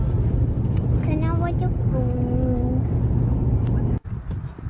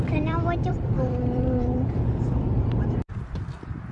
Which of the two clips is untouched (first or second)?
first